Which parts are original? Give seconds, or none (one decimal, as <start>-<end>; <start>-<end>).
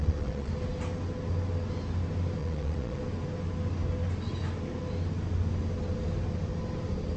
0.5-2.4; 3.0-7.2